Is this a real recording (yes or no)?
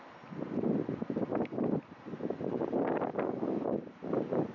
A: yes